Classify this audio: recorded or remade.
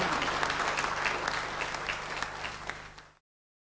recorded